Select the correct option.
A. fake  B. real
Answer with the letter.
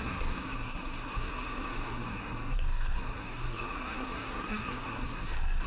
A